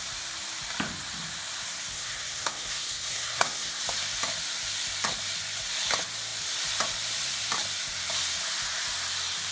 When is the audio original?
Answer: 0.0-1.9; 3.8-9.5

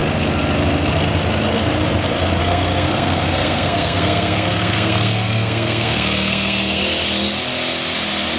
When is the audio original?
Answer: 0.0-2.4; 6.8-8.4

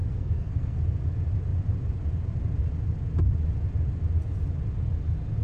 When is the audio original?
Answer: 0.8-5.4

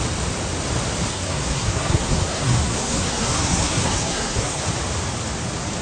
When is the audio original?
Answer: 0.0-1.1; 4.6-5.8

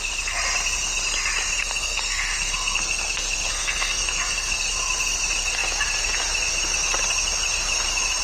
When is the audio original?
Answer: 0.0-1.6; 4.6-8.2